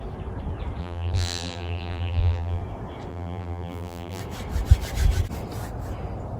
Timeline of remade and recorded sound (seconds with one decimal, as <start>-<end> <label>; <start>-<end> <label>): 0.0-0.8 recorded; 0.8-2.6 remade; 2.6-3.1 recorded; 3.1-4.2 remade; 4.2-6.4 recorded